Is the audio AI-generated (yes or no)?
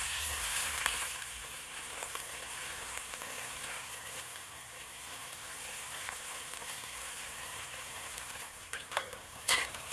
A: yes